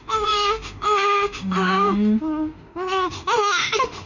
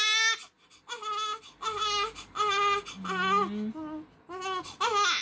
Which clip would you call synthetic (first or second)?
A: first